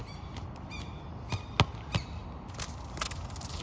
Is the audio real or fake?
real